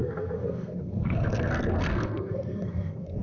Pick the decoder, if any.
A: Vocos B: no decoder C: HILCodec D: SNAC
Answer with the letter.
D